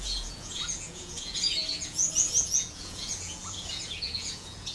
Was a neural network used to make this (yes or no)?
yes